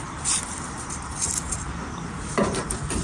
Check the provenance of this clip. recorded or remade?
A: remade